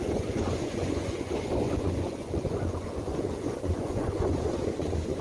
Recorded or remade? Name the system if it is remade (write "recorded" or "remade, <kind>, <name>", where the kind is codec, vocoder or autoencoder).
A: remade, vocoder, Vocos